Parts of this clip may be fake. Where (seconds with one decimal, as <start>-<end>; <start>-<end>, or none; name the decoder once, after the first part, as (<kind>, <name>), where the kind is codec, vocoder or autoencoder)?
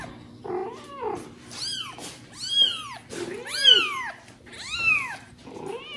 none